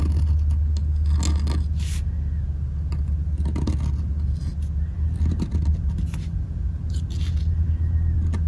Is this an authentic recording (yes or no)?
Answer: yes